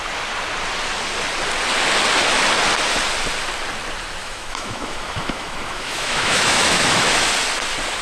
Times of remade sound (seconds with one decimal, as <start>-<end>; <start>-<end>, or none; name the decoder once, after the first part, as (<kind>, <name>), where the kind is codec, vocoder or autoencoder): 4.2-7.3 (autoencoder, DAC-VAE)